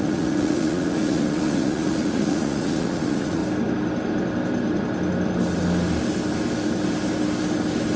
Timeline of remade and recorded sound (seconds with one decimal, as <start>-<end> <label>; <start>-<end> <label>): 0.0-3.4 remade; 3.4-8.0 recorded